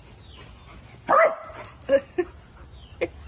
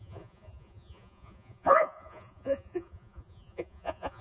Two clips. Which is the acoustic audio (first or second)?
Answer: first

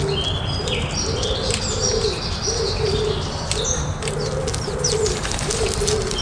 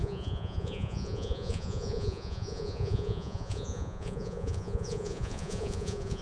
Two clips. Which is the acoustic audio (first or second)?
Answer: first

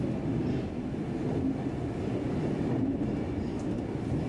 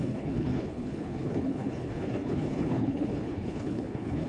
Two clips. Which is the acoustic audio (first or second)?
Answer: first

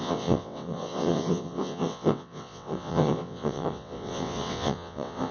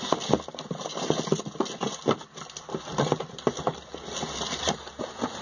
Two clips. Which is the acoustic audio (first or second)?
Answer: second